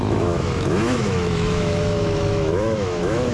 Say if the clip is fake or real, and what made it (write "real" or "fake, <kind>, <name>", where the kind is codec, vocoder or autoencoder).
fake, autoencoder, DAC-VAE